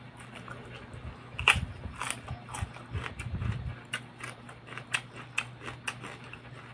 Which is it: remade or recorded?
recorded